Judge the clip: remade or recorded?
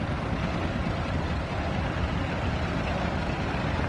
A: recorded